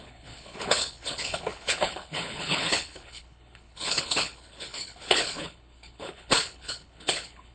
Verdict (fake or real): fake